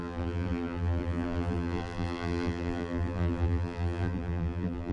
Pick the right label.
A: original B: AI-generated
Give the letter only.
B